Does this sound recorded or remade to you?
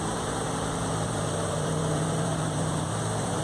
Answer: remade